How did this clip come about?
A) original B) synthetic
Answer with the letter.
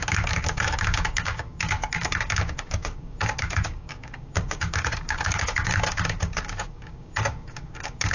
B